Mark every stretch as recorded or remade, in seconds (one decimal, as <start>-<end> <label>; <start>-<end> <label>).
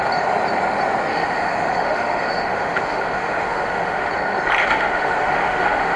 0.0-1.1 recorded; 1.1-4.1 remade; 4.1-4.6 recorded; 4.6-6.0 remade